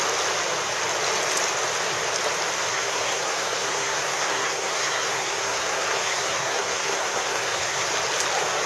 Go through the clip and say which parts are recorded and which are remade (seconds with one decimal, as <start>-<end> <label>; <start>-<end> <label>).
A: 0.0-2.7 recorded; 2.7-7.9 remade; 7.9-8.7 recorded